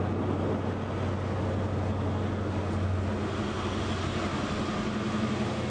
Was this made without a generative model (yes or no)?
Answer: yes